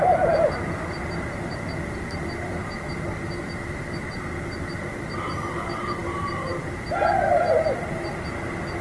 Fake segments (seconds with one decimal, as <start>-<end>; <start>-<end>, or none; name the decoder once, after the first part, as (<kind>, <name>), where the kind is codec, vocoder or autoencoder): none